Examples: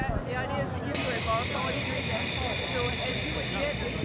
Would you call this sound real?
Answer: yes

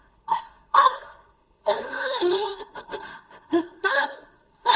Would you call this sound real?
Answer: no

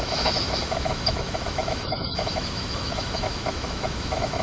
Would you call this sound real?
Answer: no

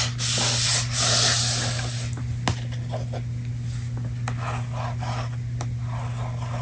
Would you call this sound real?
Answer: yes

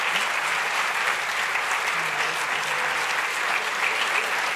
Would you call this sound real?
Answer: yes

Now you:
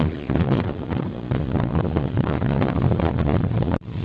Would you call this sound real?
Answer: no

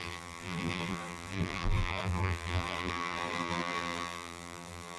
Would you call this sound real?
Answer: no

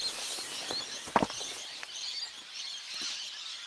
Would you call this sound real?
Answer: yes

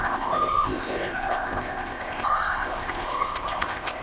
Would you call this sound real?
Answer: no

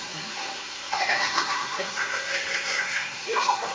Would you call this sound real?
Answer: no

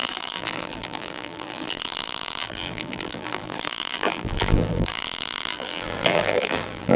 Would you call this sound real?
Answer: no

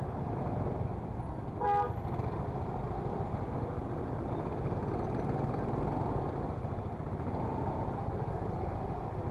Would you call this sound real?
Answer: yes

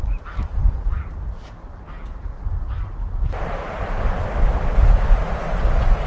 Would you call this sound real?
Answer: yes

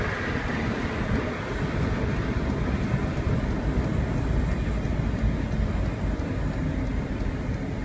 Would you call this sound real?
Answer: yes